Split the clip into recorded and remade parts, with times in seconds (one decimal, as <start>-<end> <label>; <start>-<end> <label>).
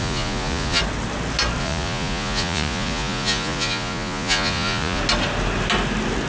0.0-0.8 remade; 0.8-1.6 recorded; 1.6-5.0 remade; 5.0-6.3 recorded